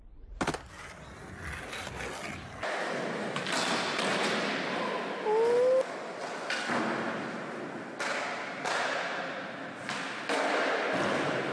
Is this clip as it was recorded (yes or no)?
yes